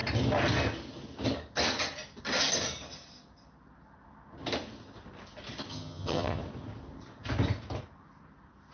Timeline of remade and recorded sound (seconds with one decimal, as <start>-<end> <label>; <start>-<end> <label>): 0.0-5.7 recorded; 5.7-6.4 remade; 6.4-8.7 recorded